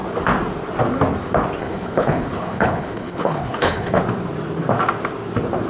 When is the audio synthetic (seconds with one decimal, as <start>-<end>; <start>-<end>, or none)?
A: 1.6-4.0